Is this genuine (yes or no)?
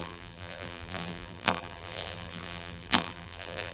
no